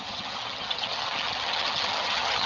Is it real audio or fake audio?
fake